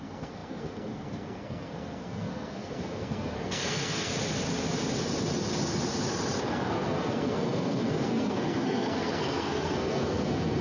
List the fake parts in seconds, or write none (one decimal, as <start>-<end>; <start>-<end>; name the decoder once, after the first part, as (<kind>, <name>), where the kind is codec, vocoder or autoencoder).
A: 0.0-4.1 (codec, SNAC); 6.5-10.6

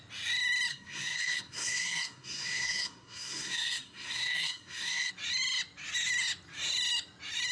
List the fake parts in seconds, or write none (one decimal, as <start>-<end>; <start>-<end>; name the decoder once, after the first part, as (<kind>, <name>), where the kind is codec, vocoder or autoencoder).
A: 0.7-5.1 (codec, SNAC)

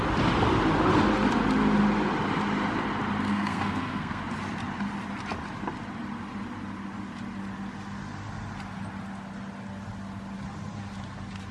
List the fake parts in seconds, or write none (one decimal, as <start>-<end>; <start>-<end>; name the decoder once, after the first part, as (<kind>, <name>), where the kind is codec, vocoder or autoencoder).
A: 3.3-4.2 (codec, SNAC)